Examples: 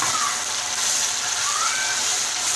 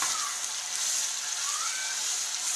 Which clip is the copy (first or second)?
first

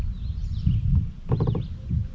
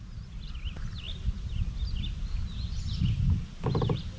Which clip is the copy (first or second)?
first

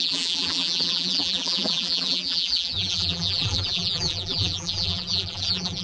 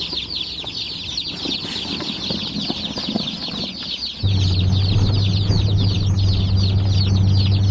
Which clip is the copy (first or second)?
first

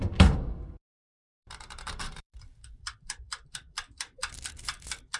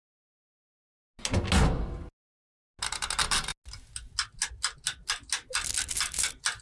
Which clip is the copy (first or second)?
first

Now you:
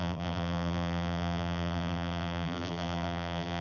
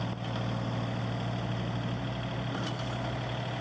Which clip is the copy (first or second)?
first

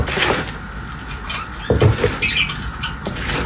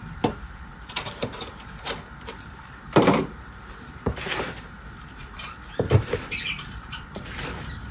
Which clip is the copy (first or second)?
second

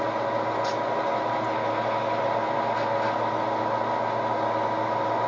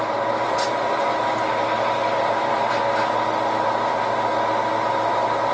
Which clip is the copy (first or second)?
second